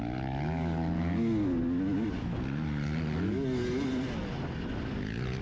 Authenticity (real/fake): real